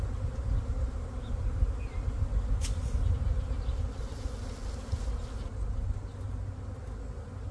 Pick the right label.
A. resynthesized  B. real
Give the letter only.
B